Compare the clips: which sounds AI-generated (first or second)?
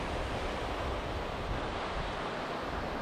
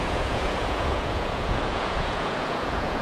second